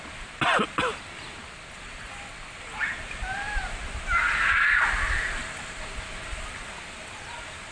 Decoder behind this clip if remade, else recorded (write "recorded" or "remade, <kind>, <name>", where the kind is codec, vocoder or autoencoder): recorded